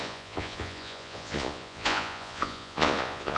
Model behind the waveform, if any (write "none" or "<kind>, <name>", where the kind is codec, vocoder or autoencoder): vocoder, Vocos